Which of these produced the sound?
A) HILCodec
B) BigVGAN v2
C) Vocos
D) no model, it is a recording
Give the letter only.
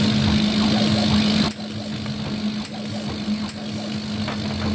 D